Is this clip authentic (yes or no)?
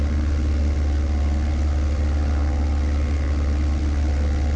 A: yes